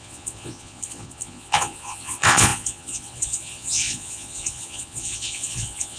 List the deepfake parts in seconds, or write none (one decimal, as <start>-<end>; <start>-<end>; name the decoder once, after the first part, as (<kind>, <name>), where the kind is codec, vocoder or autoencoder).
0.0-6.0 (vocoder, Vocos)